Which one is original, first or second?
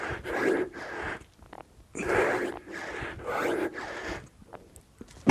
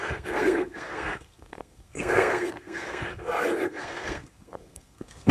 first